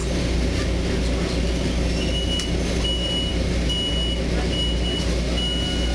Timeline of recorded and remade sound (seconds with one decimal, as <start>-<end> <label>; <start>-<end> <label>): 0.0-5.9 recorded